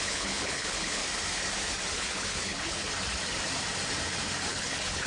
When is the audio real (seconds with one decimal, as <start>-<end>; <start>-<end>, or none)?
1.0-1.9; 2.9-4.5